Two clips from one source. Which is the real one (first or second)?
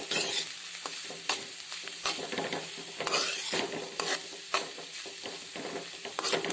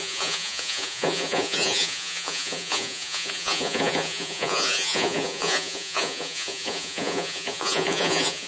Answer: first